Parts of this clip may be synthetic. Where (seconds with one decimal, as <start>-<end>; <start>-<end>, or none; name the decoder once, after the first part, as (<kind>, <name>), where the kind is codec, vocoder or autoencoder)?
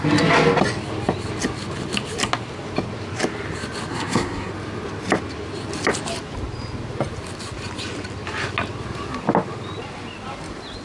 3.9-4.5 (codec, SNAC)